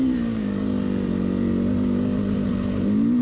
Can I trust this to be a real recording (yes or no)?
yes